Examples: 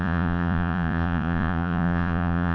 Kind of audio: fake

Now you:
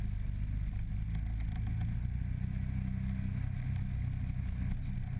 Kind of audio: real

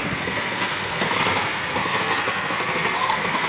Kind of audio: fake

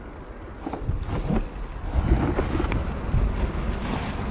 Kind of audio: real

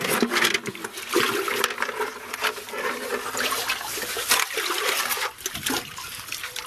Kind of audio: fake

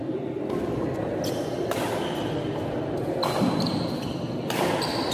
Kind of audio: real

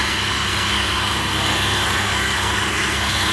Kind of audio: fake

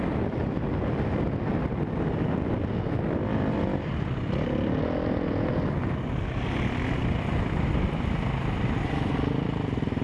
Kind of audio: real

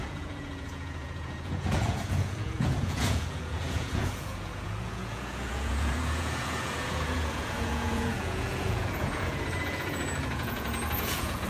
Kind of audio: fake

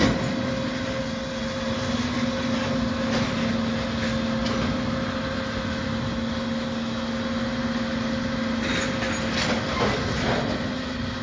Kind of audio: real